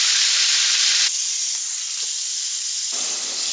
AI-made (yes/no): yes